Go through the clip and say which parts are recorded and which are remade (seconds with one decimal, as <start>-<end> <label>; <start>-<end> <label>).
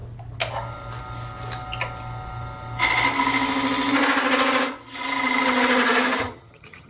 0.0-6.2 recorded; 6.2-6.9 remade